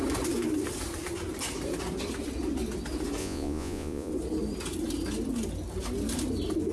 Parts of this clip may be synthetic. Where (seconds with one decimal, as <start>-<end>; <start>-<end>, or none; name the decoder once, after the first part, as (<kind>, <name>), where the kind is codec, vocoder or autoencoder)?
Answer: 3.2-4.1 (vocoder, Vocos)